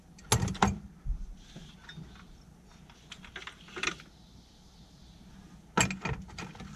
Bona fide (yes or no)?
yes